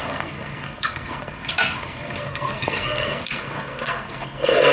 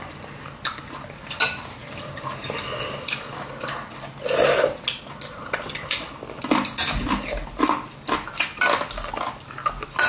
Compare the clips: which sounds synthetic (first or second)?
first